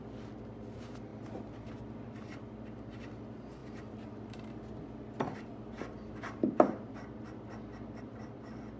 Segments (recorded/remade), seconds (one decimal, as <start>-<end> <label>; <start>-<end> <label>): 0.0-8.8 recorded